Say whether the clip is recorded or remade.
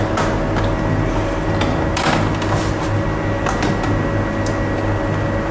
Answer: recorded